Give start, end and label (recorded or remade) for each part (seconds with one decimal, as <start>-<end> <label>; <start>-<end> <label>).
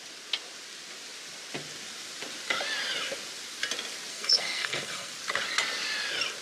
0.0-4.1 recorded; 4.1-5.1 remade; 5.1-6.4 recorded